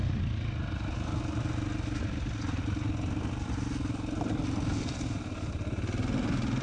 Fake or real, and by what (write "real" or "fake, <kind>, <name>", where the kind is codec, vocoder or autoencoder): real